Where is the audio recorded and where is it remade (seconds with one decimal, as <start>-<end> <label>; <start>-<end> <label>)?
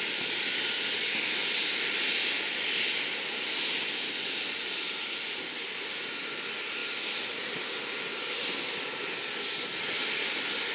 0.0-10.7 recorded